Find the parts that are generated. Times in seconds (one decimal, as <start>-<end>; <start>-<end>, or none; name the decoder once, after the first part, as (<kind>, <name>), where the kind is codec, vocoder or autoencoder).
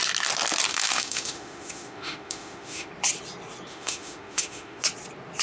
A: 0.7-2.9 (autoencoder, DAC-VAE); 3.7-4.8